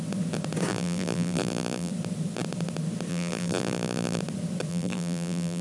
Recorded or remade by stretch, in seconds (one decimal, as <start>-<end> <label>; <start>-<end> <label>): 0.0-0.7 recorded; 0.7-1.9 remade; 1.9-3.1 recorded; 3.1-4.2 remade; 4.2-4.7 recorded; 4.7-5.6 remade